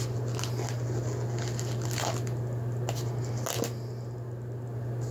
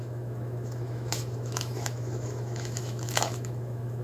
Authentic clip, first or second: first